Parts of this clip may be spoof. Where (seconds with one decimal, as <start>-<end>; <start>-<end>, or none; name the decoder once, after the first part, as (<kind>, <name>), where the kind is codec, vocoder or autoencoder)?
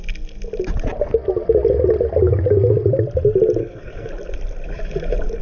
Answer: 3.6-4.1 (codec, SNAC)